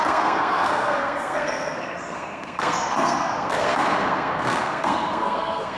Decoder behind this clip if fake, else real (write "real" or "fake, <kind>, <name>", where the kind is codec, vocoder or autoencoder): fake, codec, SNAC